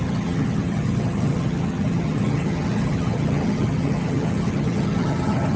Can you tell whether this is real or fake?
fake